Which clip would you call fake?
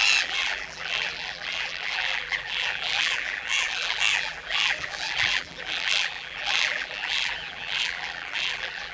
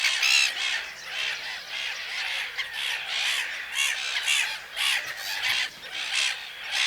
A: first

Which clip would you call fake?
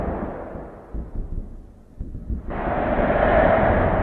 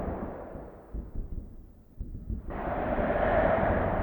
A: second